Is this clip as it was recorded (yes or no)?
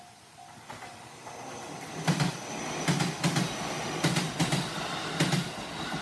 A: yes